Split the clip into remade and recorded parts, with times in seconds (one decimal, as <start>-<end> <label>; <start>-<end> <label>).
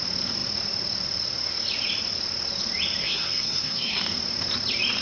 0.0-3.0 recorded; 3.0-4.0 remade; 4.0-5.0 recorded